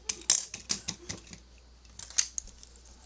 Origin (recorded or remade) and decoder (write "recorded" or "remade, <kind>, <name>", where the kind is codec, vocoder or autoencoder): recorded